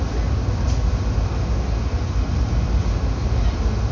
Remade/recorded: recorded